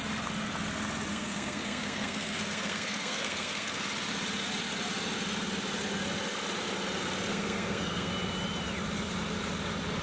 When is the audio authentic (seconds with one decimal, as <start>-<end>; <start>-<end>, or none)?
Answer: 0.0-1.1; 3.8-7.3; 8.1-10.0